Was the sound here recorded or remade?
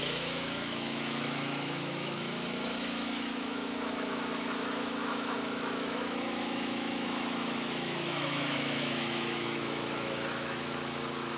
remade